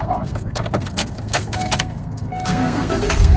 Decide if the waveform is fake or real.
fake